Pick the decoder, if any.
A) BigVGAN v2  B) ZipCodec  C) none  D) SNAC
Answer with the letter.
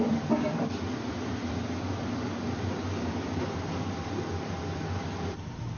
A